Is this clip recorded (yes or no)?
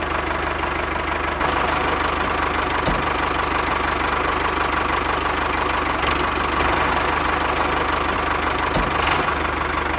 yes